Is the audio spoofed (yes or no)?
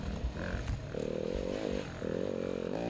no